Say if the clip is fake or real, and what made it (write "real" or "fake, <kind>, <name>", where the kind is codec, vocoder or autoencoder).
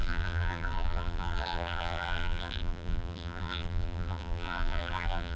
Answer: fake, vocoder, BigVGAN v2